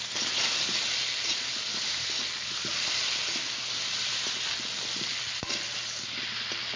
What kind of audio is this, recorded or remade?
recorded